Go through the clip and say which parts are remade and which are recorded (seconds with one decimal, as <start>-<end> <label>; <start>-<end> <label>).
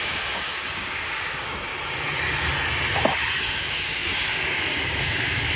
0.0-1.7 remade; 1.7-3.4 recorded; 3.4-5.6 remade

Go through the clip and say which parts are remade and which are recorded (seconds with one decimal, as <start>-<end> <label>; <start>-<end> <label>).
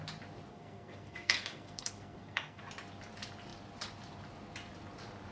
0.0-0.5 recorded; 0.5-2.6 remade; 2.6-5.3 recorded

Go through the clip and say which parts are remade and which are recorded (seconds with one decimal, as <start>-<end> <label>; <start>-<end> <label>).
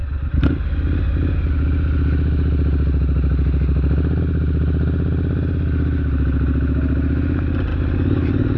0.0-8.6 recorded